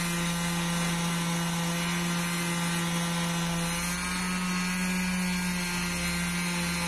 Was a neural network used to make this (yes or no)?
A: no